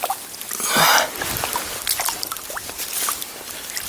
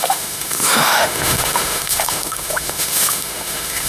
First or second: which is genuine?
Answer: first